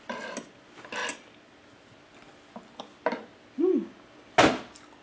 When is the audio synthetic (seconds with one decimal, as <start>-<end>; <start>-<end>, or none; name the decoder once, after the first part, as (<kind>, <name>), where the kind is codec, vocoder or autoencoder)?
none

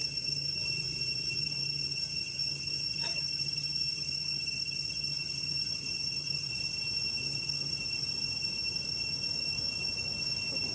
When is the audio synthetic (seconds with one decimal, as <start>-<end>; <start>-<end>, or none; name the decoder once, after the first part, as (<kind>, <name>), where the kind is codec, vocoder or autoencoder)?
0.0-0.6 (vocoder, HiFi-GAN); 1.4-6.5; 7.2-7.8

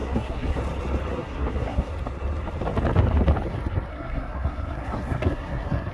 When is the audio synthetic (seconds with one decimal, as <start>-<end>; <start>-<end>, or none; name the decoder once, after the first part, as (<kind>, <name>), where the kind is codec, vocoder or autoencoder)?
0.0-0.6 (codec, SNAC); 1.1-1.9; 3.9-5.9

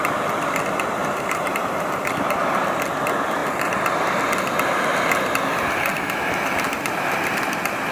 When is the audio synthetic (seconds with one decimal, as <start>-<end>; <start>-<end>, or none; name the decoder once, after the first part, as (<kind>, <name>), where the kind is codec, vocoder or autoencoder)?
1.0-2.1 (vocoder, BigVGAN v2); 3.4-3.9

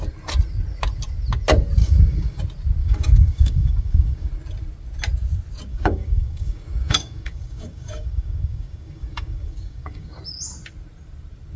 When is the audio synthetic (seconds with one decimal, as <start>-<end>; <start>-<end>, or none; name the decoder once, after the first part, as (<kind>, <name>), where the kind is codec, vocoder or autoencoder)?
1.8-2.4 (codec, DAC); 2.8-4.3; 5.7-10.2

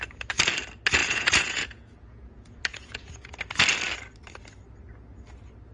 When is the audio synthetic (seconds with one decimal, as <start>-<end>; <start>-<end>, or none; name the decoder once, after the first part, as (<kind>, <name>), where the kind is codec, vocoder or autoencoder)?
1.0-3.4 (vocoder, Vocos)